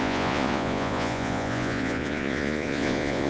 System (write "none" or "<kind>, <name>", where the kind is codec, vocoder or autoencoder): vocoder, Vocos